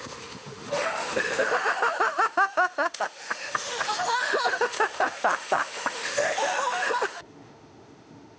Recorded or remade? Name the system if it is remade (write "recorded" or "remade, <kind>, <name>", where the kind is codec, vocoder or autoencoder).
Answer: remade, autoencoder, DAC-VAE